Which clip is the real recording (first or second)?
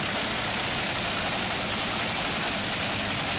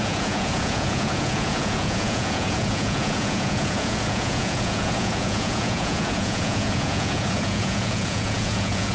first